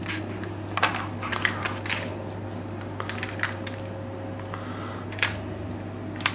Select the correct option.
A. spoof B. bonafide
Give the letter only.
B